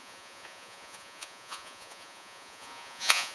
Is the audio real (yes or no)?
no